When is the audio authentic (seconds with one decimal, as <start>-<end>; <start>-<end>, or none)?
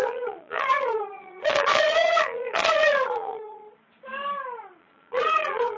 3.6-4.8